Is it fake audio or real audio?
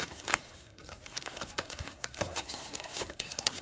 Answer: fake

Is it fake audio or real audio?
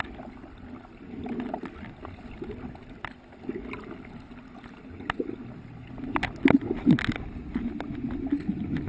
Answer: real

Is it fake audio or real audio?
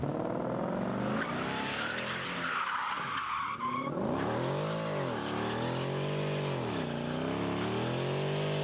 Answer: real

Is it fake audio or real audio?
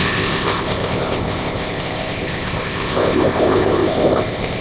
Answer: fake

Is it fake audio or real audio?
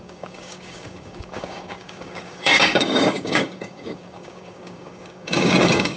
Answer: fake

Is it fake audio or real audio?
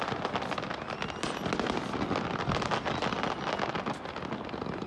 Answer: real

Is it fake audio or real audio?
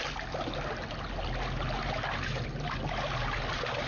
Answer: real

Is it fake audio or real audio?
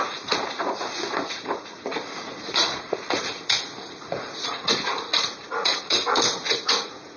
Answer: fake